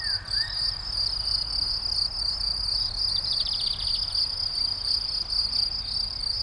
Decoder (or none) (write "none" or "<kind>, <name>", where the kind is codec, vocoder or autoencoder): none